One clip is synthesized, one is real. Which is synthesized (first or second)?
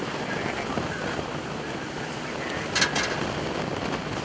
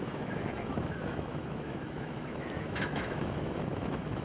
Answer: second